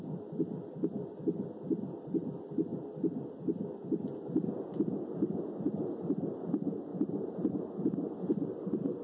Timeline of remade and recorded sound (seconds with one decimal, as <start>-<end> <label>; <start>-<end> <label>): 0.0-6.9 recorded; 6.9-7.5 remade; 7.5-9.0 recorded